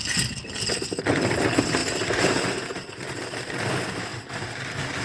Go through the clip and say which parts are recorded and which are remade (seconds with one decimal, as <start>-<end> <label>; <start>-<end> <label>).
0.0-5.0 recorded